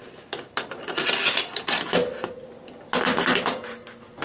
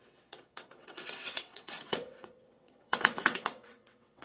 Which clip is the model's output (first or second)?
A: second